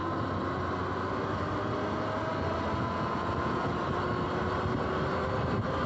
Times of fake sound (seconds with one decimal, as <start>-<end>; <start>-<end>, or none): 2.8-3.8